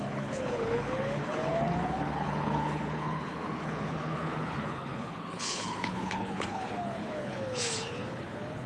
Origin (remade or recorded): remade